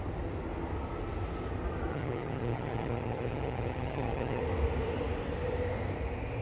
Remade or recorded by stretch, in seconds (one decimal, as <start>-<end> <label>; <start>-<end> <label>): 0.0-1.9 recorded; 1.9-4.4 remade; 4.4-6.4 recorded